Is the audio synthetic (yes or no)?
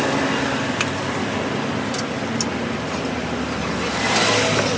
no